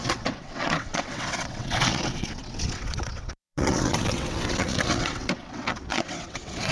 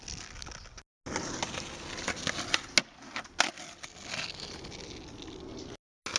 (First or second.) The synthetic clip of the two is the first